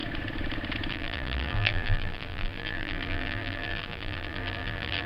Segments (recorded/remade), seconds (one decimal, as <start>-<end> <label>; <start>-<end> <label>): 0.0-0.9 recorded; 0.9-5.1 remade